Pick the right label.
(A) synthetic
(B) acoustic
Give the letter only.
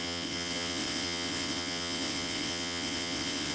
A